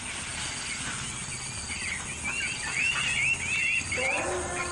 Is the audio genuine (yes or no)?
yes